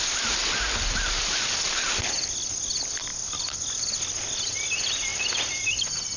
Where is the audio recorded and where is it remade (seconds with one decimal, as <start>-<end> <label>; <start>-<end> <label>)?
0.0-6.2 recorded